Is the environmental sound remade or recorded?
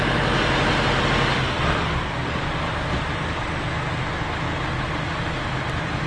recorded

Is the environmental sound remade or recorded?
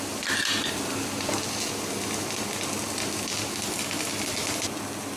recorded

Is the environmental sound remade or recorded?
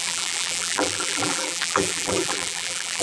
remade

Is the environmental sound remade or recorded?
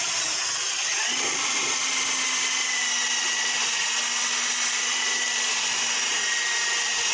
recorded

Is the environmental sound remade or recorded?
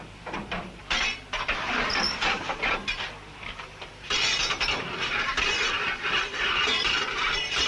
remade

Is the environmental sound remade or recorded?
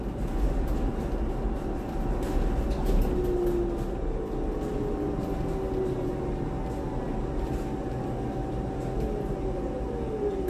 recorded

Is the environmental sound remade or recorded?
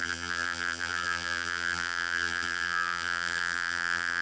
remade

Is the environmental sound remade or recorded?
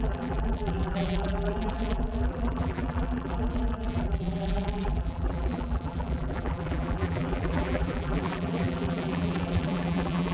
remade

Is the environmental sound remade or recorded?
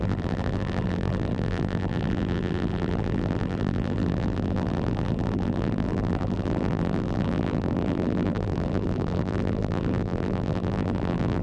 remade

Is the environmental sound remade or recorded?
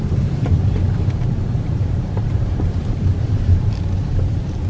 remade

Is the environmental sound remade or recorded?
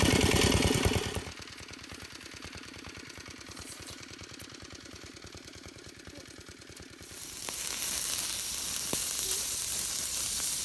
recorded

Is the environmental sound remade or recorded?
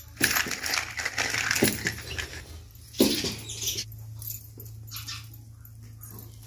recorded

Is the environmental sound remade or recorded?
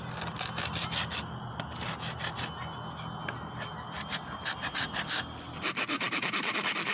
recorded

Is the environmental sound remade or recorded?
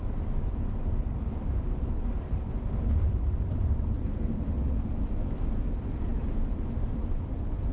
remade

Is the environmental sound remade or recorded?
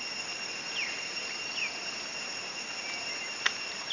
recorded